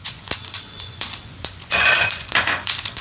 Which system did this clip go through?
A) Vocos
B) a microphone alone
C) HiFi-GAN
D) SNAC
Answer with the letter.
A